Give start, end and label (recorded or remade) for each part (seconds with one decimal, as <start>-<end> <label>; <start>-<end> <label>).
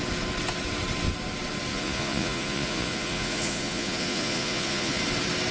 0.0-1.7 recorded; 1.7-5.0 remade; 5.0-5.5 recorded